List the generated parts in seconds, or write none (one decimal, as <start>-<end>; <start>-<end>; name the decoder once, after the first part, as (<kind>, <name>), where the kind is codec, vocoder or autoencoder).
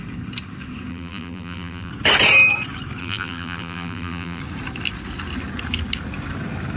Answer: 0.9-1.9 (vocoder, BigVGAN v2); 3.0-4.4